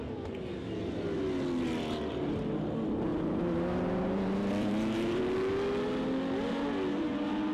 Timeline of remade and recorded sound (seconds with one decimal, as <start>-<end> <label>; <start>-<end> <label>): 0.0-3.1 recorded; 3.1-5.2 remade; 5.2-7.5 recorded